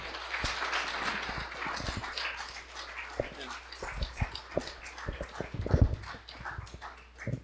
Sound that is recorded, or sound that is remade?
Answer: recorded